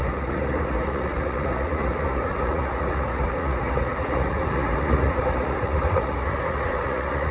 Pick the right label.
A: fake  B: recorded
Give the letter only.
A